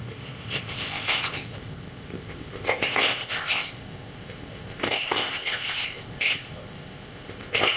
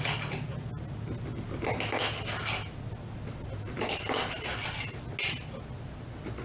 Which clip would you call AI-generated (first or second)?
first